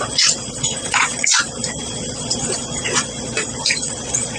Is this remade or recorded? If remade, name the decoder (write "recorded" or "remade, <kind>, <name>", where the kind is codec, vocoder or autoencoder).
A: remade, vocoder, Vocos